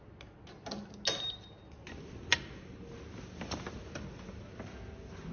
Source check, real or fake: real